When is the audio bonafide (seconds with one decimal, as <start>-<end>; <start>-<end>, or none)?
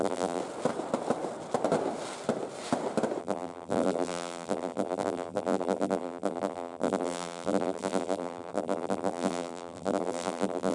0.4-3.2